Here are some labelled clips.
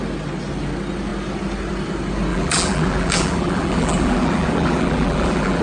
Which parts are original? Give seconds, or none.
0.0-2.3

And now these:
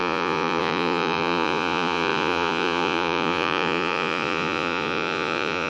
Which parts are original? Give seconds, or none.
none

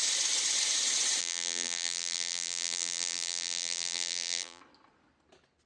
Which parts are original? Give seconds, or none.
0.0-1.2; 4.6-5.7

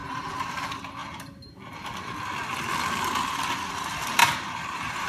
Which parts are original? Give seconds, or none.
0.6-1.0; 1.6-4.2

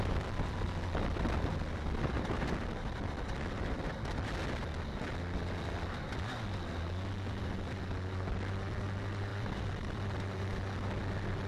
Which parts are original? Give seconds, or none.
0.0-9.3; 10.4-11.5

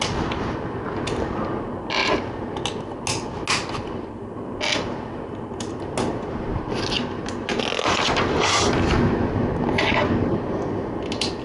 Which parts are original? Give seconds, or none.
0.0-11.4